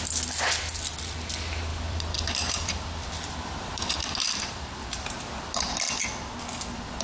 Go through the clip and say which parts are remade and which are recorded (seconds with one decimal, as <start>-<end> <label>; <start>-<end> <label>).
0.0-1.7 recorded; 1.7-5.4 remade; 5.4-7.0 recorded